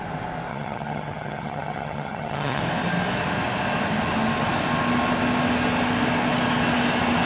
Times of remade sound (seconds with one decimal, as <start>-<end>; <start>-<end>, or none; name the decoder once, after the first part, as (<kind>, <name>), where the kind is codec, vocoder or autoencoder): 0.5-2.6 (vocoder, HiFi-GAN)